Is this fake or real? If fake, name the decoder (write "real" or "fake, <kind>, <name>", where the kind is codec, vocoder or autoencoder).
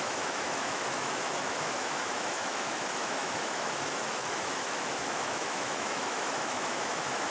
fake, autoencoder, DAC-VAE